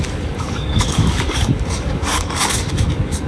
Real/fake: fake